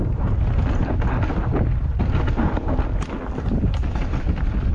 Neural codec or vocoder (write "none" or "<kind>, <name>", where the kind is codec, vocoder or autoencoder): none